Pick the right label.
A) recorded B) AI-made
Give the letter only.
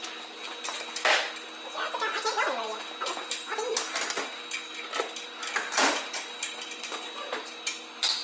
A